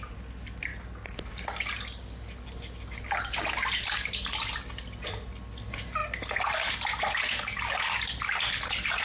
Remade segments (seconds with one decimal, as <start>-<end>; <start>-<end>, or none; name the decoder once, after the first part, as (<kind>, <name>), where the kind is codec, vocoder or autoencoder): none